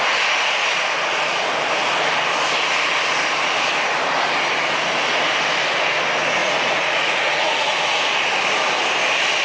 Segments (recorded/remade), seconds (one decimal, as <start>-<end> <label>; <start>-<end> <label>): 0.0-6.4 recorded; 6.4-8.2 remade; 8.2-9.4 recorded